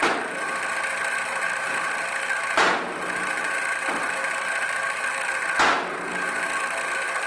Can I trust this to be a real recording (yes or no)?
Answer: yes